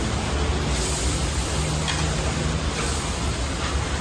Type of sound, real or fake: real